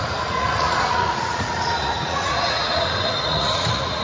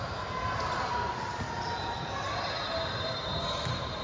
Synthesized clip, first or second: first